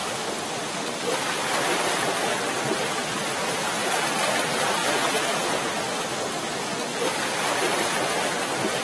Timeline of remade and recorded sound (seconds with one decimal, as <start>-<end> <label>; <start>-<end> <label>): 0.0-4.8 recorded; 4.8-5.7 remade; 5.7-8.8 recorded